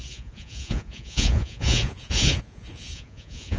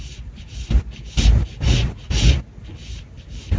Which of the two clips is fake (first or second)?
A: first